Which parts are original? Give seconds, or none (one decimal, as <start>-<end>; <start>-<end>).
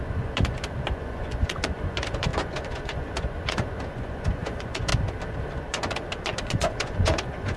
4.9-5.5